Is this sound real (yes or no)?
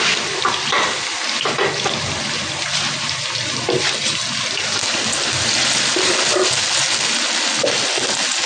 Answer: yes